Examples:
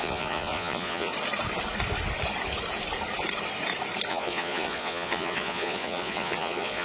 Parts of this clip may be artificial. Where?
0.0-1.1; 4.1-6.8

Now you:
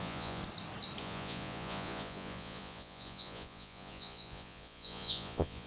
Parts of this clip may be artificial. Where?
0.0-0.4; 1.0-5.7

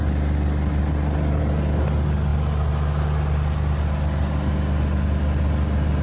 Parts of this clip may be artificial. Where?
none

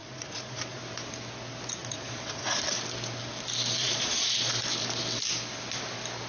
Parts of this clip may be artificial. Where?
0.0-0.8; 1.8-2.6; 3.8-4.5

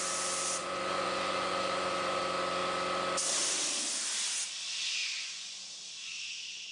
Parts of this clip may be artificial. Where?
0.6-2.2; 5.0-5.6